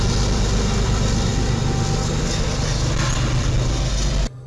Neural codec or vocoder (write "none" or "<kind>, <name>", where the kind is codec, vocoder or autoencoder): none